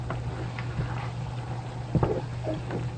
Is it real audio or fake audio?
real